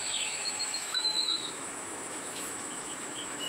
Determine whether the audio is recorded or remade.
remade